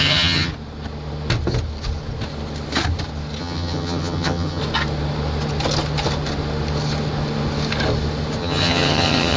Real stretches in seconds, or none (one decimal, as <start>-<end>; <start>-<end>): 0.5-3.4; 4.6-8.4

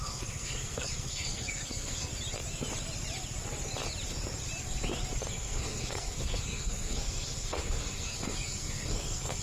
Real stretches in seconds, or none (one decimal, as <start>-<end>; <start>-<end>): 2.1-5.3

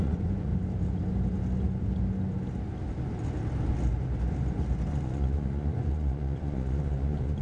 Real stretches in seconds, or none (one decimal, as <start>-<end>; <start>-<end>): 0.5-4.9

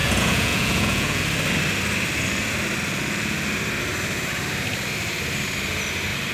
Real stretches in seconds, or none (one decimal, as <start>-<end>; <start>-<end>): 1.2-6.3

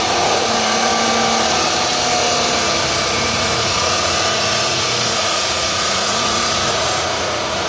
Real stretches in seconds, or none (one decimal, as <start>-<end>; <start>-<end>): 0.9-3.3